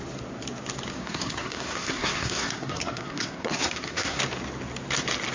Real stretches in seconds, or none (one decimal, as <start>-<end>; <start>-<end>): 0.0-1.0; 4.2-5.3